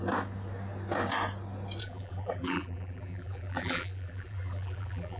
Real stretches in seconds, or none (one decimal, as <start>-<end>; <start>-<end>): 0.0-1.8